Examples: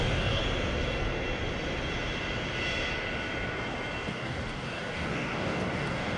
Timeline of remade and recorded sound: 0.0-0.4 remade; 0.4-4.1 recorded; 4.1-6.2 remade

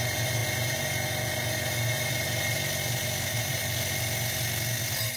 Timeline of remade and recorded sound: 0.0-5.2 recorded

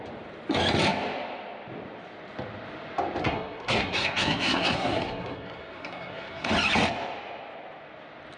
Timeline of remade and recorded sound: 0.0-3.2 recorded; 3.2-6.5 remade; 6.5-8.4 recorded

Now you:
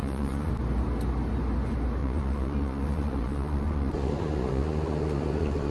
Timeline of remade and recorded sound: 0.0-0.5 remade; 0.5-2.0 recorded; 2.0-5.7 remade

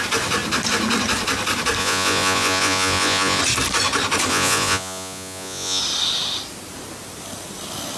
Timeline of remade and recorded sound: 0.0-1.8 recorded; 1.8-3.4 remade; 3.4-4.3 recorded; 4.3-5.8 remade; 5.8-8.0 recorded

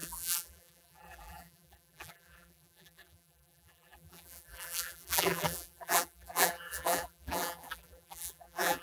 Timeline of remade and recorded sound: 0.0-8.8 remade